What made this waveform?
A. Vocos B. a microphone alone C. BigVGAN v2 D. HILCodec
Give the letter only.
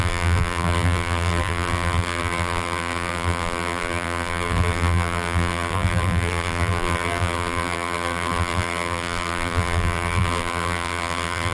C